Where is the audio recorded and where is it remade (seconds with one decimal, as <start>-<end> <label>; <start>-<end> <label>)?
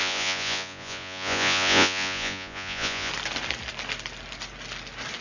0.0-3.1 remade; 3.1-5.2 recorded